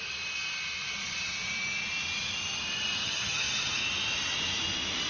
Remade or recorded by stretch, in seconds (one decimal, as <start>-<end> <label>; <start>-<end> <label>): 0.0-3.0 recorded; 3.0-3.8 remade; 3.8-5.1 recorded